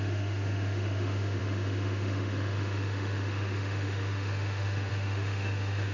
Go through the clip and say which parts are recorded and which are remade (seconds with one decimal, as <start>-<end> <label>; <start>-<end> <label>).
0.0-5.9 remade